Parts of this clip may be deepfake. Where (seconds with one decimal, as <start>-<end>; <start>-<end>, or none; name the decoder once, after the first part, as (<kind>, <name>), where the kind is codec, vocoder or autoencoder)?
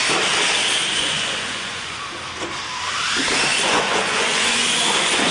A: 0.9-2.0 (vocoder, Vocos); 3.5-5.3